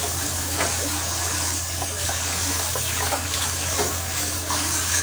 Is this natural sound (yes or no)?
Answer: no